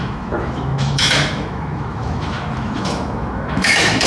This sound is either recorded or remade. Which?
remade